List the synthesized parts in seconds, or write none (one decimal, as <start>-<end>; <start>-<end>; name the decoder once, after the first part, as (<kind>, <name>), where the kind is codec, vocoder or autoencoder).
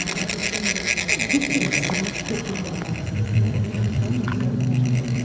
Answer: 0.0-0.4 (vocoder, BigVGAN v2); 1.6-5.2